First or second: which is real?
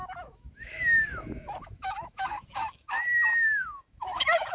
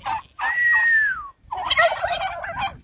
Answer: second